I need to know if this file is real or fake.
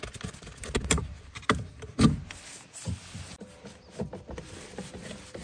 real